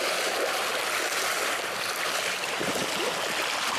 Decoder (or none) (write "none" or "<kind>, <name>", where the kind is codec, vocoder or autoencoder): none